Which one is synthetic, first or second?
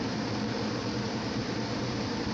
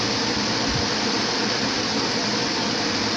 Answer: first